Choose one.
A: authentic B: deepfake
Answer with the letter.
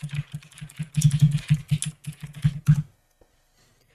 A